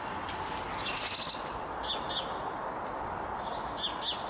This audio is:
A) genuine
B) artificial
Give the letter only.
A